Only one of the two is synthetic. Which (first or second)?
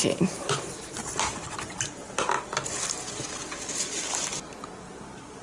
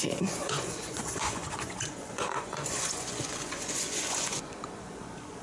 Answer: second